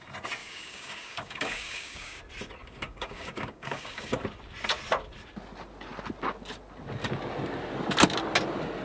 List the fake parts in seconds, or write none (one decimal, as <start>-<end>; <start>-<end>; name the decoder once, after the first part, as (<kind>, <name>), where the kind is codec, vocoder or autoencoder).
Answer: 0.4-2.2 (codec, DAC); 2.6-4.2